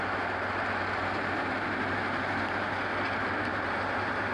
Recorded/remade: recorded